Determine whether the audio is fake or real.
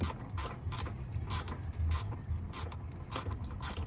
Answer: real